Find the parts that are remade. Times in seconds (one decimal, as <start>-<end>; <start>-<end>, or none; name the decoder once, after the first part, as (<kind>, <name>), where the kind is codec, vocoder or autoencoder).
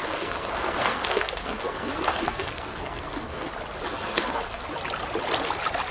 0.0-3.5 (codec, SNAC); 3.9-4.6